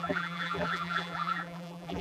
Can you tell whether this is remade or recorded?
remade